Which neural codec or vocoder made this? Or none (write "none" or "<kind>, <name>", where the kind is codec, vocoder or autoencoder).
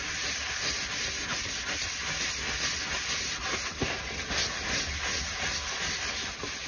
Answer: none